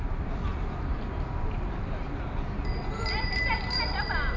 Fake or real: real